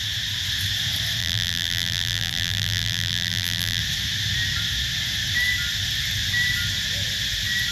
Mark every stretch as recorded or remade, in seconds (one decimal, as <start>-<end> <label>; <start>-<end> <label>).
0.0-1.2 recorded; 1.2-3.8 remade; 3.8-7.7 recorded